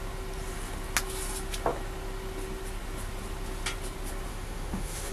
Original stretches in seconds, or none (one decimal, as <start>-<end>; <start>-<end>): 0.0-4.3